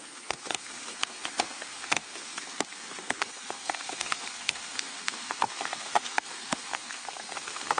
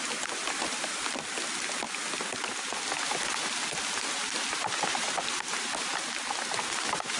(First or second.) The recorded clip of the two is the second